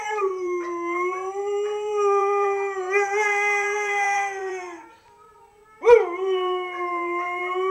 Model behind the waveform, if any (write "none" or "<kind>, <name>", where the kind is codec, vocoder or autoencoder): vocoder, BigVGAN v2